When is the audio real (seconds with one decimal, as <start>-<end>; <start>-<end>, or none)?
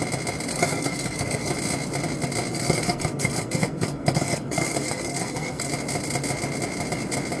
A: 0.0-0.5; 1.5-2.5; 5.7-7.4